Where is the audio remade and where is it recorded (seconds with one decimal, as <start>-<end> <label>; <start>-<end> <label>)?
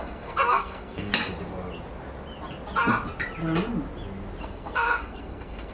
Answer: 0.0-1.1 remade; 1.1-4.4 recorded; 4.4-5.7 remade